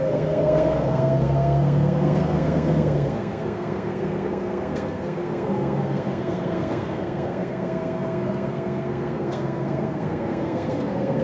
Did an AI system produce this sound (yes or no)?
yes